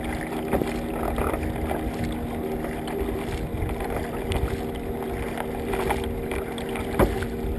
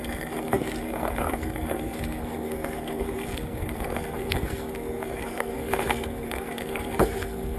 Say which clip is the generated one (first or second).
second